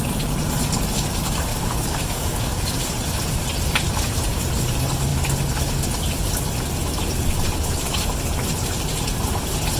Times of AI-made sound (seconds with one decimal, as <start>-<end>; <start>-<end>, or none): 1.5-2.8